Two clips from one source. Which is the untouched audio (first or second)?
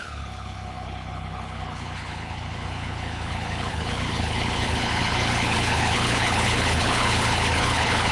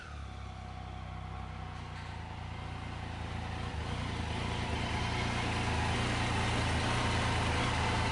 second